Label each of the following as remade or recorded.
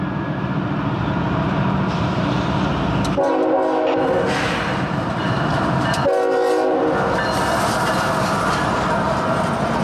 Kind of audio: recorded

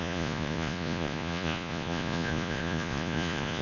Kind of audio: remade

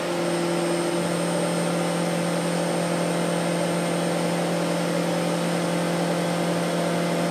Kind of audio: recorded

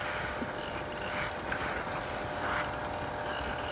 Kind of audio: recorded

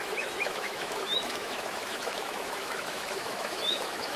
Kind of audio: remade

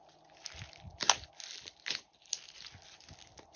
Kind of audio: recorded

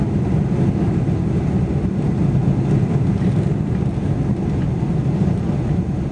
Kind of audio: recorded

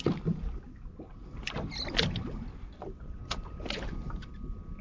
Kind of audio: recorded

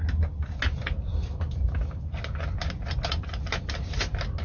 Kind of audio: recorded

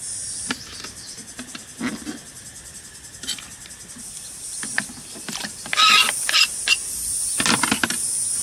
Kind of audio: recorded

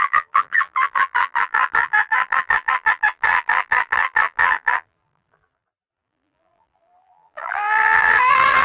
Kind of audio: remade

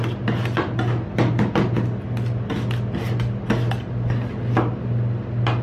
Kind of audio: recorded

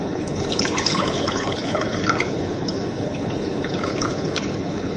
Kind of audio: remade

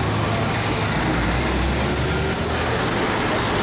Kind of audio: recorded